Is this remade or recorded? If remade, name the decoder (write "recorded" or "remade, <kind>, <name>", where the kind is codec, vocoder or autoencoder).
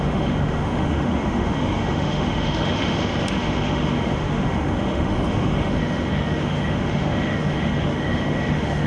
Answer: remade, autoencoder, DAC-VAE